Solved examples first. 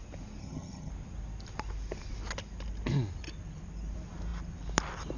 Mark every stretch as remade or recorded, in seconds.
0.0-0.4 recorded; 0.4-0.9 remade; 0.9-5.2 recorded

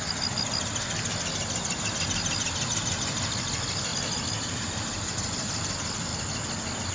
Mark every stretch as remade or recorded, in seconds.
0.0-6.9 recorded

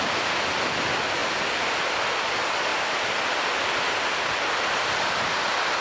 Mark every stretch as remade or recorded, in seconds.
0.0-5.8 recorded

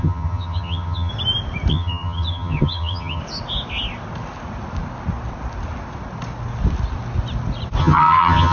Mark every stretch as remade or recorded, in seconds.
0.0-1.1 remade; 1.1-1.7 recorded; 1.7-3.2 remade; 3.2-7.8 recorded; 7.8-8.5 remade

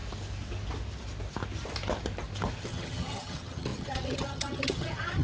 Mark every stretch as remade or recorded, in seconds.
0.0-2.6 recorded; 2.6-5.2 remade

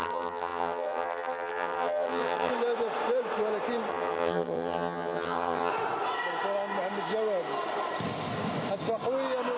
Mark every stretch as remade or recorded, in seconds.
0.0-2.5 remade; 2.5-3.9 recorded; 3.9-5.7 remade; 5.7-9.6 recorded

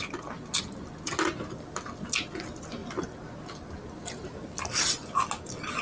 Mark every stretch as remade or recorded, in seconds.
0.0-5.8 recorded